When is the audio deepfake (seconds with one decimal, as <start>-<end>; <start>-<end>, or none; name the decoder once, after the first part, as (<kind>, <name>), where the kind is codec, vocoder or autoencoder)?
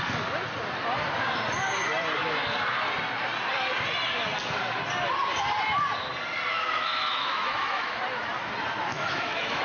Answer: 6.5-8.0 (autoencoder, DAC-VAE); 8.9-9.6